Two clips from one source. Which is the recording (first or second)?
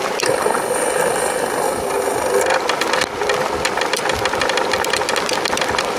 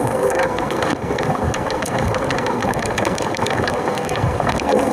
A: first